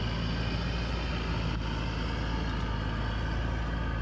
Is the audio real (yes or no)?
yes